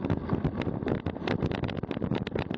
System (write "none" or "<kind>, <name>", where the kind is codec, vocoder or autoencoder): none